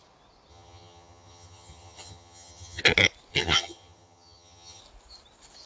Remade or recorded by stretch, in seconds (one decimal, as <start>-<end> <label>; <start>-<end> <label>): 0.0-0.5 recorded; 0.5-2.8 remade; 2.8-3.3 recorded; 3.3-4.8 remade; 4.8-5.7 recorded